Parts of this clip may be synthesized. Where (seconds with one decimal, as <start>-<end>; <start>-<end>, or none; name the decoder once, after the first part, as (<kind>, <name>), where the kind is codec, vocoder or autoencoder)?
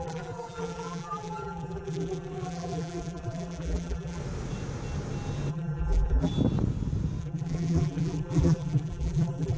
0.0-4.2 (vocoder, BigVGAN v2); 5.5-6.3; 7.2-9.6